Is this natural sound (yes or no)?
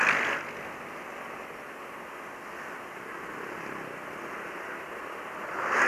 yes